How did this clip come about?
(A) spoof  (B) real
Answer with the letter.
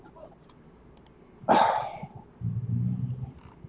B